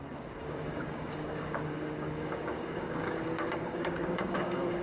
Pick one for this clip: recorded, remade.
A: remade